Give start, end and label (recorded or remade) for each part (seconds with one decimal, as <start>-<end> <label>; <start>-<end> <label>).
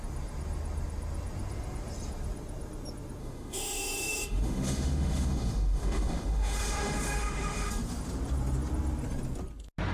0.0-3.2 recorded; 3.2-7.7 remade; 7.7-9.9 recorded